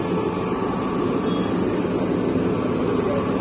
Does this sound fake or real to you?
fake